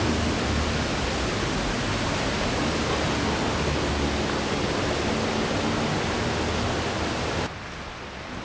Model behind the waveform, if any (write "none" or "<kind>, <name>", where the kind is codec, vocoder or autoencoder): none